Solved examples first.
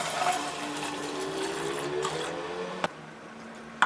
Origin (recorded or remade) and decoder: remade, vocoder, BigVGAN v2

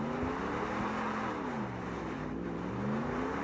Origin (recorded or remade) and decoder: remade, vocoder, BigVGAN v2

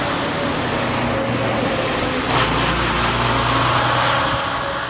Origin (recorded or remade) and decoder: recorded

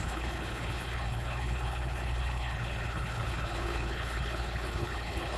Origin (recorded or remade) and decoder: remade, codec, HILCodec